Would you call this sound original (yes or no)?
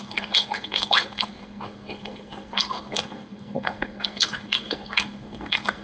no